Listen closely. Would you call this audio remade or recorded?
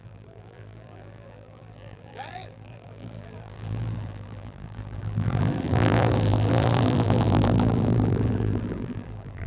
remade